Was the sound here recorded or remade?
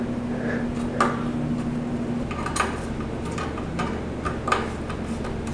recorded